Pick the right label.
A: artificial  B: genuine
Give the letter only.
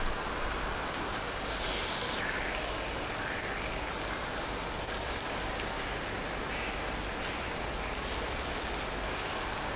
B